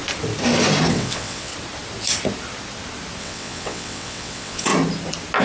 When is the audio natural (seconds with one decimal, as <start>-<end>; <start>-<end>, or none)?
0.0-0.9; 1.5-3.2; 4.7-5.4